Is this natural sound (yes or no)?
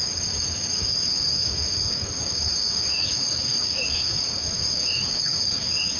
no